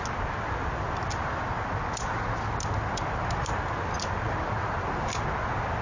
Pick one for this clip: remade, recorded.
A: recorded